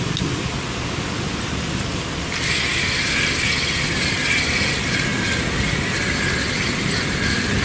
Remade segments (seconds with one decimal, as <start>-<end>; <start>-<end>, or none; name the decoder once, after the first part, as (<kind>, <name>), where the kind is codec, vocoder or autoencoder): none